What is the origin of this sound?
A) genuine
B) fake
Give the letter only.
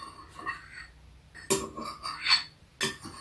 A